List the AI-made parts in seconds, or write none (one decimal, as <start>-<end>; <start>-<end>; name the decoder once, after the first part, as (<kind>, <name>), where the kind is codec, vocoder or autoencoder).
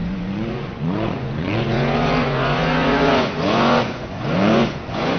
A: 0.0-5.2 (vocoder, Vocos)